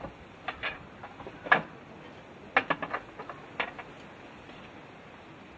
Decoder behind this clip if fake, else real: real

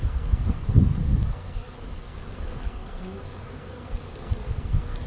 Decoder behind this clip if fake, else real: fake, codec, SNAC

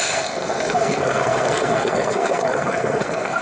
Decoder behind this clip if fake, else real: fake, codec, SNAC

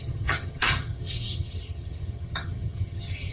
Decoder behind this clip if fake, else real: fake, vocoder, HiFi-GAN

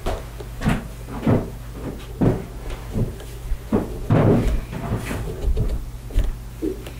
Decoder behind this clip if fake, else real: real